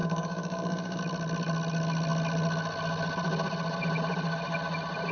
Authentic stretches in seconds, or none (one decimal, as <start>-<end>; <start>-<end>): 1.0-5.1